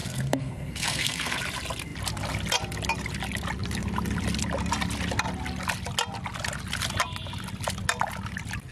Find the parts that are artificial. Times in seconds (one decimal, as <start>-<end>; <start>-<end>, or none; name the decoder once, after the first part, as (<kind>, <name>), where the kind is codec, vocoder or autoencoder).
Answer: 0.0-1.4 (codec, SNAC)